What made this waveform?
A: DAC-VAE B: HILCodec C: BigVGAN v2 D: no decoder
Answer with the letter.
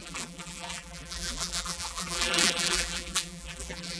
C